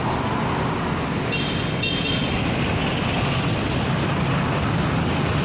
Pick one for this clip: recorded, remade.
recorded